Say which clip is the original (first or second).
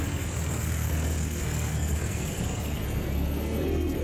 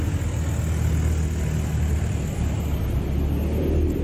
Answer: second